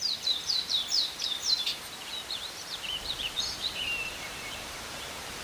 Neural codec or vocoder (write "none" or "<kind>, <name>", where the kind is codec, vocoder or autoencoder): vocoder, BigVGAN v2